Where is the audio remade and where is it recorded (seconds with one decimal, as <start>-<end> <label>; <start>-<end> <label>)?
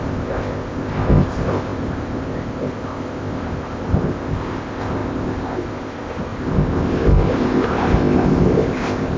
0.0-9.2 remade